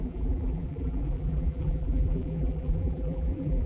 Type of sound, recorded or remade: remade